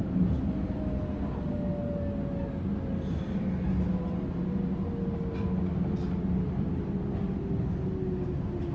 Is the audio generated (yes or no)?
no